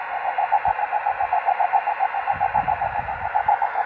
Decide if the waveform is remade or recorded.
recorded